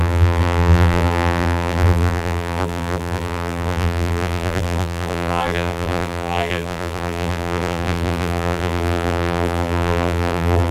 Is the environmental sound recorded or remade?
remade